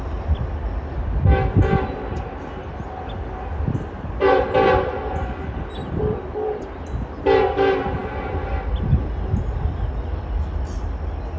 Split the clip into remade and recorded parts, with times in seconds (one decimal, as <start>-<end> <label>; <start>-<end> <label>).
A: 0.0-5.8 recorded; 5.8-6.7 remade; 6.7-11.4 recorded